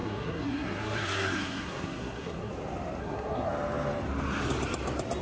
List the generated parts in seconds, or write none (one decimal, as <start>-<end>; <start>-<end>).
0.0-2.5; 3.0-3.5